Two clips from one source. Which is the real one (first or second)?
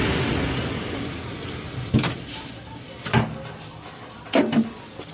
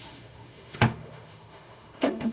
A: first